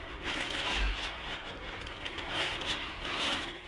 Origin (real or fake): fake